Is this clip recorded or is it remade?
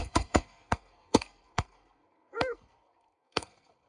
remade